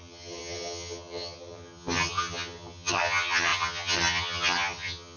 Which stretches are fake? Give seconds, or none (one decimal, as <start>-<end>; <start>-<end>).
0.0-5.2